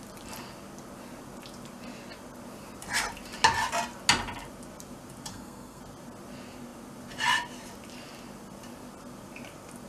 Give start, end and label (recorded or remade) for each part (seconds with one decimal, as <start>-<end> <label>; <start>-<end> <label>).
0.0-5.3 recorded; 5.3-5.8 remade; 5.8-9.9 recorded